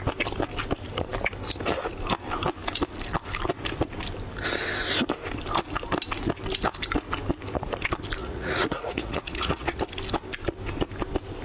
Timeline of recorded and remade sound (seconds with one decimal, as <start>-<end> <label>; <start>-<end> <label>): 0.0-8.2 recorded; 8.2-9.9 remade; 9.9-11.4 recorded